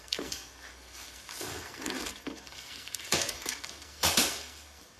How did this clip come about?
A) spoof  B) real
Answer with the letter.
A